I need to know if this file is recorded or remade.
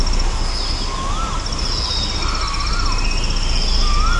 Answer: recorded